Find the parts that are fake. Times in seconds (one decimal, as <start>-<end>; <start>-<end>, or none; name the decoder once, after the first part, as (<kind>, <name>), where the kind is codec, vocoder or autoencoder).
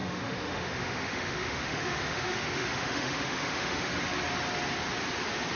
0.0-3.9 (autoencoder, DAC-VAE)